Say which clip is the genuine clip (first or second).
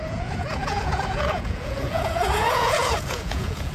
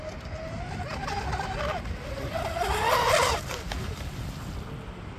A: second